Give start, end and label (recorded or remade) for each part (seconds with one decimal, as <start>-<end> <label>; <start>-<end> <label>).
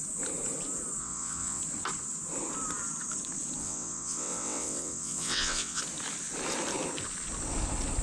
0.0-1.0 recorded; 1.0-1.6 remade; 1.6-3.6 recorded; 3.6-5.8 remade; 5.8-8.0 recorded